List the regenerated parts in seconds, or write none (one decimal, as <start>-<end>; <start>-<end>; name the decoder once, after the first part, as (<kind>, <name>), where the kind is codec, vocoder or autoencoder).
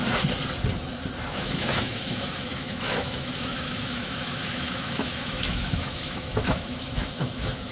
1.3-7.7 (autoencoder, DAC-VAE)